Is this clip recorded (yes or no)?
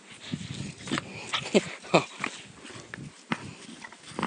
yes